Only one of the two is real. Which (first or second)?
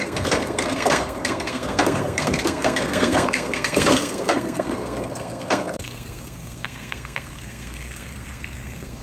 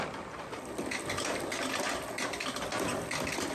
second